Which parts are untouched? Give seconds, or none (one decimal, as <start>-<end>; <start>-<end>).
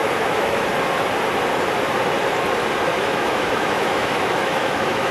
0.6-2.9